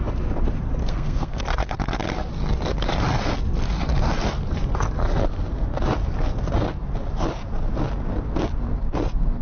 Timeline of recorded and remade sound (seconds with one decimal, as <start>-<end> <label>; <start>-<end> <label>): 0.0-0.8 recorded; 0.8-1.4 remade; 1.4-9.4 recorded